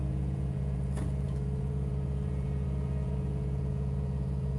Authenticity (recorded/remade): remade